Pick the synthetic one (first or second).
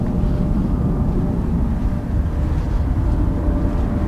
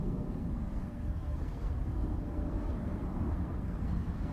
second